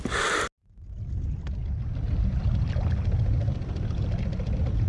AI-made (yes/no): no